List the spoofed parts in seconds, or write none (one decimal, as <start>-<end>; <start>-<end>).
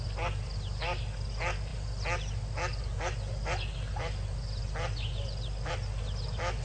none